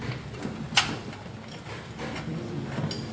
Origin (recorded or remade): recorded